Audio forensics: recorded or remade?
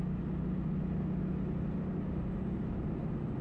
recorded